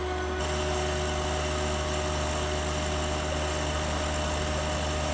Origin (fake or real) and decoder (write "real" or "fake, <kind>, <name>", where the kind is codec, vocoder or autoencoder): real